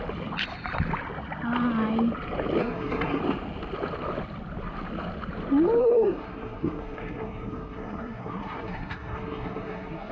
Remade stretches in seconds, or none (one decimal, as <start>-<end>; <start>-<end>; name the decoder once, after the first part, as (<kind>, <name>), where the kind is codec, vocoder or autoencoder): 2.6-3.2 (codec, SNAC); 5.8-10.1